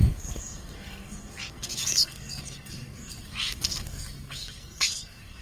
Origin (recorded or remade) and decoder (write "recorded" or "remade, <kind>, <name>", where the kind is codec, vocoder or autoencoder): remade, codec, SNAC